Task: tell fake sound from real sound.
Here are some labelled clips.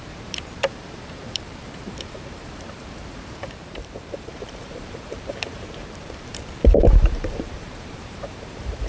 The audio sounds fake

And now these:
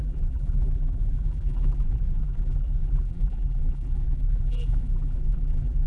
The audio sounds fake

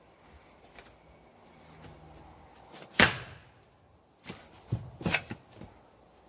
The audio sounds real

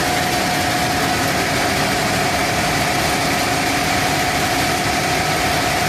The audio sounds real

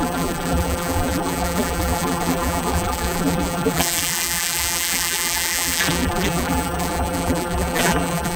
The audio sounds fake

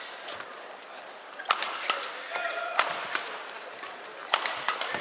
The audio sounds fake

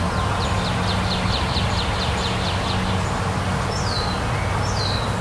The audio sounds real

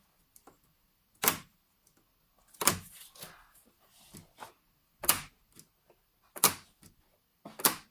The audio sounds real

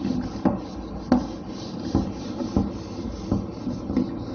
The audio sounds real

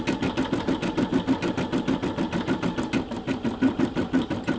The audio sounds real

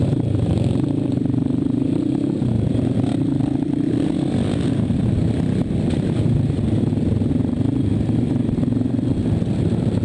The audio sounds fake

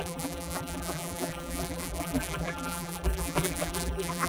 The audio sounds fake